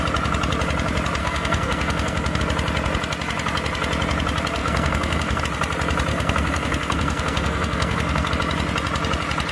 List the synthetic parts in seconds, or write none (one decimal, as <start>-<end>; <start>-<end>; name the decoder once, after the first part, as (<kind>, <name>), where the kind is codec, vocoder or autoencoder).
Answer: 1.2-2.4 (codec, SNAC); 4.6-5.4; 6.1-8.3